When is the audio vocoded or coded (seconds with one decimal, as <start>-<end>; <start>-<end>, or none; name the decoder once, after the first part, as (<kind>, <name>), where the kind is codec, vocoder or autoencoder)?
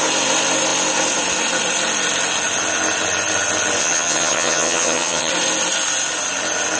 3.8-5.3 (vocoder, HiFi-GAN)